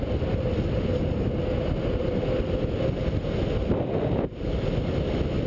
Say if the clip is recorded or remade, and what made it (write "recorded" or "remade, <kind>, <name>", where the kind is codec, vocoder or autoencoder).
recorded